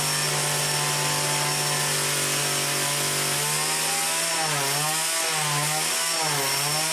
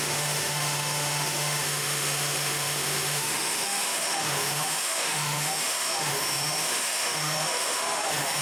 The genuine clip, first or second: first